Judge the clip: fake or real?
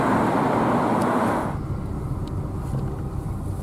real